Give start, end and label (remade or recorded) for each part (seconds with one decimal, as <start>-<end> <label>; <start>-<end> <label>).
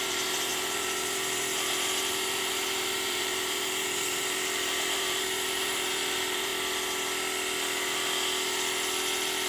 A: 0.0-6.5 remade; 6.5-9.5 recorded